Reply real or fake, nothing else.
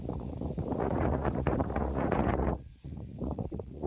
fake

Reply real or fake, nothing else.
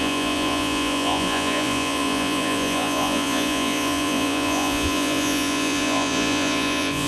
fake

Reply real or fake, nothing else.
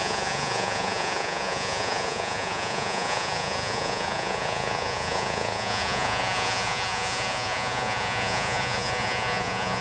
fake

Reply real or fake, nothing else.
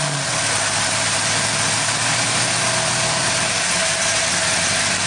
real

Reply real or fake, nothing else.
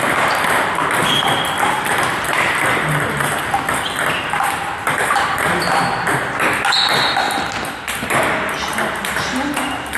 real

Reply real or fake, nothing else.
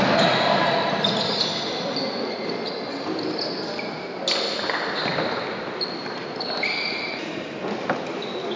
real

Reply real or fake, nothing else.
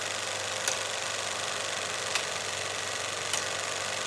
real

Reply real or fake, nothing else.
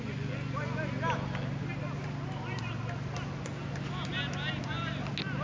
real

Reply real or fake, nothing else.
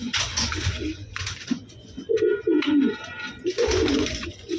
fake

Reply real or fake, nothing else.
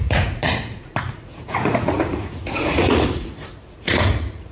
fake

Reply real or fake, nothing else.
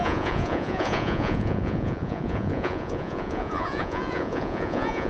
fake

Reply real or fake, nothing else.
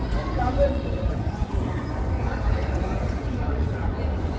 fake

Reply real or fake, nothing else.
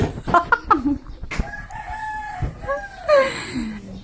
real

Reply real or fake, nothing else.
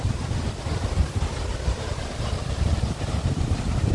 real